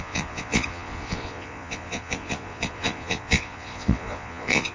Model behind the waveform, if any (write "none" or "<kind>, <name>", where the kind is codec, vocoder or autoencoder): vocoder, Vocos